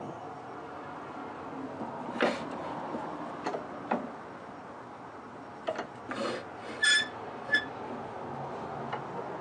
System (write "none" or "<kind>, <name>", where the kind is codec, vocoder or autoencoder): none